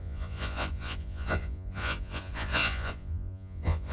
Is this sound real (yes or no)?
no